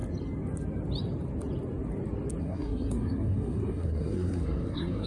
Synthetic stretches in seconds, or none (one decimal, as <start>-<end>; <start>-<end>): 2.4-5.1